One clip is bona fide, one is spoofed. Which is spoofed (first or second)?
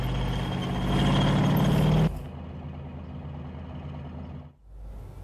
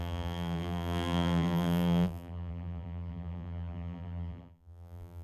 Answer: second